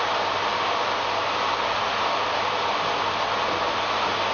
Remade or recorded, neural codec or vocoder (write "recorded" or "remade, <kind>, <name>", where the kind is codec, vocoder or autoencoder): recorded